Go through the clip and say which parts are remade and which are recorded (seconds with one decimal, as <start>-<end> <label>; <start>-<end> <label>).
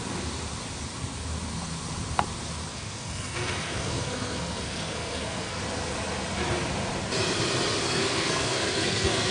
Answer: 0.0-2.7 recorded; 2.7-5.6 remade; 5.6-7.8 recorded; 7.8-9.3 remade